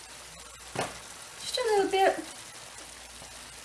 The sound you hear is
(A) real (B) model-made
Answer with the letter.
A